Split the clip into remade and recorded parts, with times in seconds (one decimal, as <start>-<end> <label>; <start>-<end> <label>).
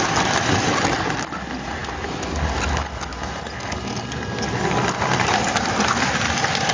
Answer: 0.0-6.7 recorded